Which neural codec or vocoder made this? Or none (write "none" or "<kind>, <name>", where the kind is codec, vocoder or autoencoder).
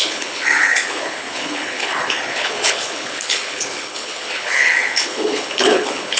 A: codec, HILCodec